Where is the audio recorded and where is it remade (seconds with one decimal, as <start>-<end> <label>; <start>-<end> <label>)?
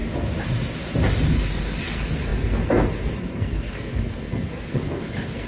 0.0-1.3 recorded; 1.3-5.5 remade